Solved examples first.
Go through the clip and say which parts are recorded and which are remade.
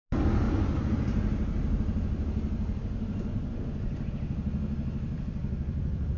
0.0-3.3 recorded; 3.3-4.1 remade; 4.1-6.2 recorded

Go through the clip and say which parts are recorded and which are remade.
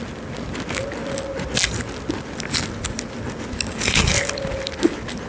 0.0-5.3 recorded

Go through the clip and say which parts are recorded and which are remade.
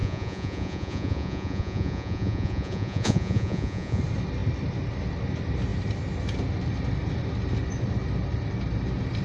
0.0-4.0 remade; 4.0-9.2 recorded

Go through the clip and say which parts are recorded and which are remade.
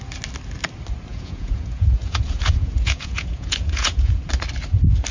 0.0-1.1 recorded; 1.1-4.2 remade; 4.2-5.1 recorded